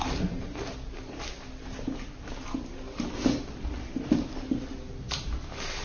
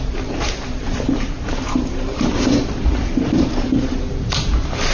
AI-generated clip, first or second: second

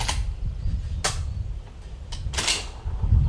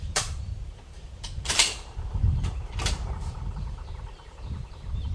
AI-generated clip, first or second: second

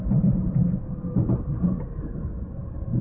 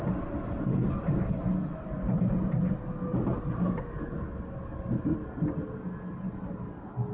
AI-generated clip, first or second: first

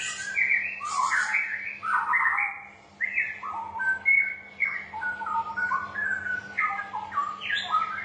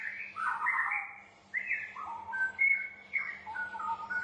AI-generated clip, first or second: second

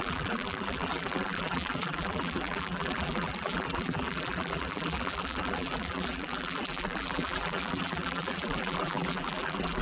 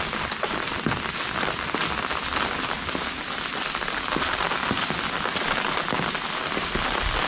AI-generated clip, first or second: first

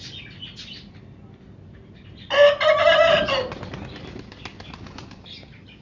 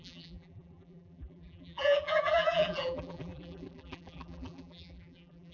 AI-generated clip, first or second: second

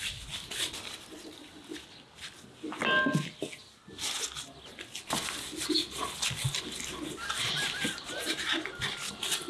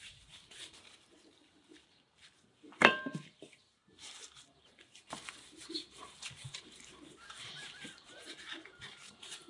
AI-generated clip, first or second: second